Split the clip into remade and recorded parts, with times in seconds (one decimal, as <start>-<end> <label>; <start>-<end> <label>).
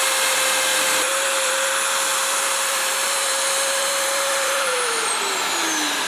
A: 0.0-0.7 recorded; 0.7-1.7 remade; 1.7-2.1 recorded; 2.1-5.1 remade; 5.1-6.1 recorded